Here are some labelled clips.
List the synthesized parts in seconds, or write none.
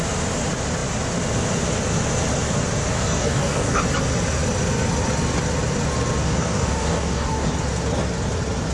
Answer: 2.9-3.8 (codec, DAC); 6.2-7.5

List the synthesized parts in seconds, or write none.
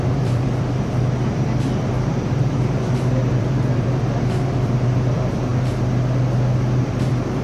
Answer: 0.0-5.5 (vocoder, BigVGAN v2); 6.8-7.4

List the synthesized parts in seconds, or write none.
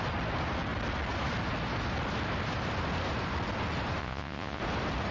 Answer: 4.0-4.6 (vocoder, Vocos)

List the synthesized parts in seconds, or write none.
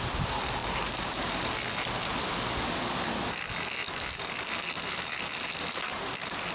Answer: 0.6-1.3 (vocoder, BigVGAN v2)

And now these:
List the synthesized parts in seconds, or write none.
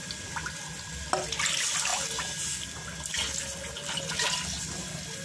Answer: none